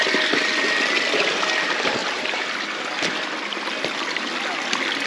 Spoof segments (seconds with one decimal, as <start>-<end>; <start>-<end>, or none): 2.0-4.1